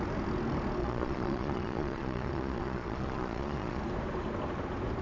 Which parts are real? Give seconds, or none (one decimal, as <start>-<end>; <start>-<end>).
0.0-0.8; 3.8-5.0

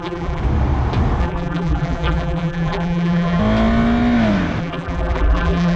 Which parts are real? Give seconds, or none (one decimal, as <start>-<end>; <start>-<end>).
0.4-1.2; 3.4-4.6

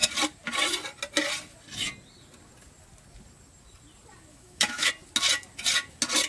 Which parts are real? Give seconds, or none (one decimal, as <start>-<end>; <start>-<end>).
0.0-4.3; 4.9-6.3

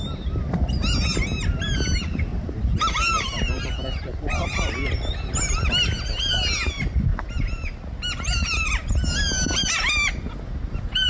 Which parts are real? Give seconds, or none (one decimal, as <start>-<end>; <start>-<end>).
0.0-2.3; 4.7-11.1

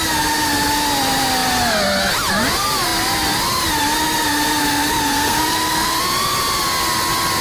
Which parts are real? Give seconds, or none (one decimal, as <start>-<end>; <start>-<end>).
0.0-4.6; 6.0-7.4

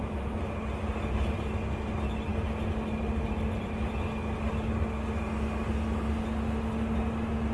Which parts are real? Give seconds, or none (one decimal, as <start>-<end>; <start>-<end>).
0.0-7.5